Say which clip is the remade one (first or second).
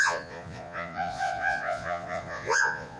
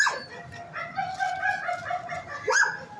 first